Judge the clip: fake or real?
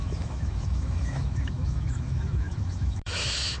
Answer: fake